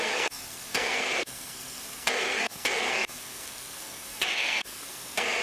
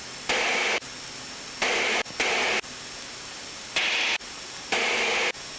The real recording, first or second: second